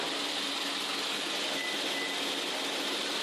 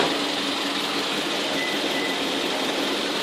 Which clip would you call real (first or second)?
first